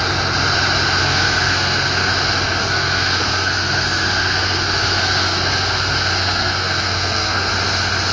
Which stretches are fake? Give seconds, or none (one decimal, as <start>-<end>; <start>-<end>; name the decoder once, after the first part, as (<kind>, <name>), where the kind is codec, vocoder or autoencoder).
1.0-2.1 (codec, SNAC); 2.6-7.5